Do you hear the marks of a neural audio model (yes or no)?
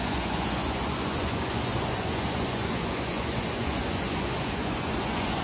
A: yes